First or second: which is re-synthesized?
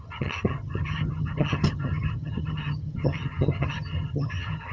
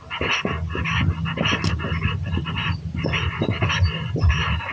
first